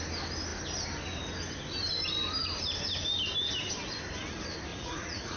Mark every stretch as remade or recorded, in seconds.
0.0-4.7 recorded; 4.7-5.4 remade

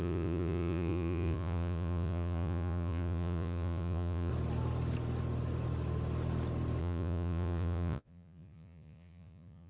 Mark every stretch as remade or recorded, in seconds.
0.0-4.3 remade; 4.3-6.8 recorded; 6.8-9.7 remade

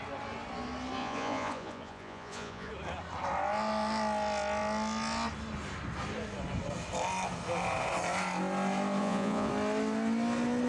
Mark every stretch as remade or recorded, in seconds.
0.0-1.0 recorded; 1.0-2.7 remade; 2.7-9.0 recorded; 9.0-9.5 remade; 9.5-10.7 recorded

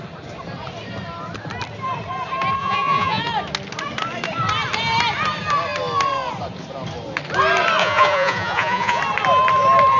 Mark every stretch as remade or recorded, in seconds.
0.0-2.6 recorded; 2.6-3.2 remade; 3.2-7.8 recorded; 7.8-9.0 remade; 9.0-10.0 recorded

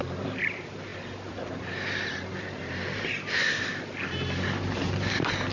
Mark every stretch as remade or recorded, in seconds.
0.0-5.5 recorded